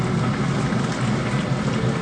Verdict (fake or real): real